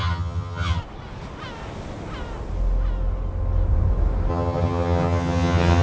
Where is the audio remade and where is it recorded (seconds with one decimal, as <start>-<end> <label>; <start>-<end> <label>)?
0.0-0.8 remade; 0.8-4.3 recorded; 4.3-5.8 remade